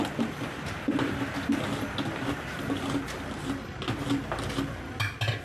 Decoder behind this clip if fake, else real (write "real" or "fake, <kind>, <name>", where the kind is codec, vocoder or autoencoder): real